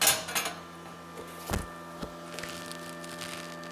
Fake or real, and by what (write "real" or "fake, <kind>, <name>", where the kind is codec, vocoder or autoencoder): real